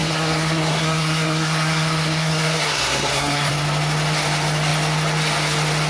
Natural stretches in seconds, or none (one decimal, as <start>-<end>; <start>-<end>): 3.5-5.9